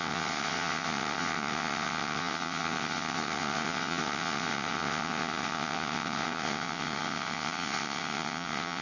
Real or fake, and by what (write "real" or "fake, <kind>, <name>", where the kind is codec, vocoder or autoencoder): fake, vocoder, WaveNeXt